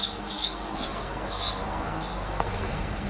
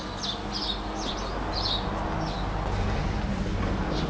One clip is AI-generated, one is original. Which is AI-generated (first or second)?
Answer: first